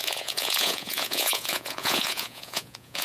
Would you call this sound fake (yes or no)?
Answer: yes